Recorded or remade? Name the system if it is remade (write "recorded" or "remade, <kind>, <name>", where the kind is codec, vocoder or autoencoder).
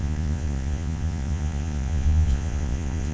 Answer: remade, vocoder, Vocos